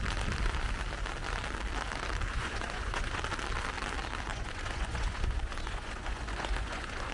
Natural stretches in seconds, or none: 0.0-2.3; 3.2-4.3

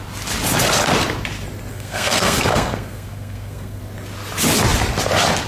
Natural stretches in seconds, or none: 0.0-1.7; 3.8-5.5

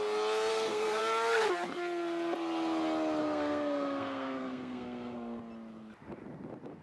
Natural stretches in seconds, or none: 0.0-0.5; 1.0-3.2; 5.4-6.8

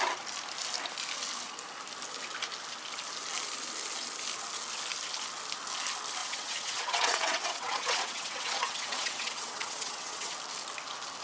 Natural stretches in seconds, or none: 0.0-6.2; 10.3-11.2

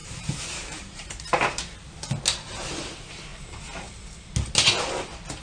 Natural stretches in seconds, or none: 1.6-5.4

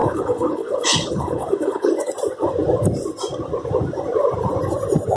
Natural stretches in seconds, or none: 1.9-5.2

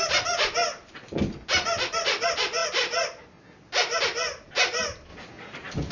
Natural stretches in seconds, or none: 0.0-2.6; 3.6-5.9

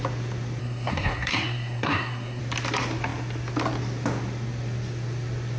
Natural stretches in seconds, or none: 0.0-0.6; 2.4-5.6